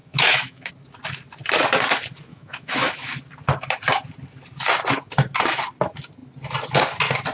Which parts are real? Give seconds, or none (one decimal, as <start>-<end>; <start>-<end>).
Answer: 0.7-2.3; 2.9-7.3